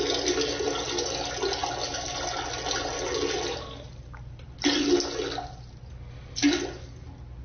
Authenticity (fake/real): real